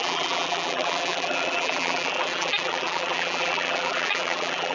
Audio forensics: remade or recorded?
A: remade